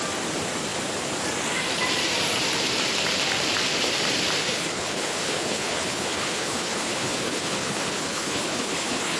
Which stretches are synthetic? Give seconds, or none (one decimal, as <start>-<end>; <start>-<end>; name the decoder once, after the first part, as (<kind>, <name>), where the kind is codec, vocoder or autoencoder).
4.4-9.2 (codec, HILCodec)